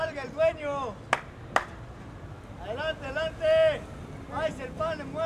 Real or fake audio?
real